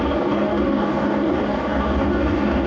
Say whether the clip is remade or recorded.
remade